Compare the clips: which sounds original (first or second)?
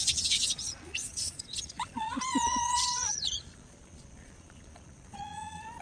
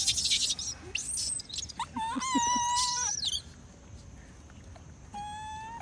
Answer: second